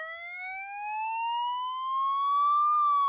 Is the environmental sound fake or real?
real